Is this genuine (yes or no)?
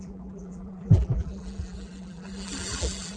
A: no